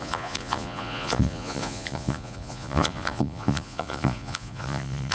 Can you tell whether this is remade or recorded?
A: remade